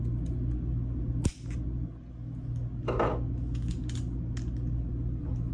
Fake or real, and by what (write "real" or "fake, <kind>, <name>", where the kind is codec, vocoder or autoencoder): real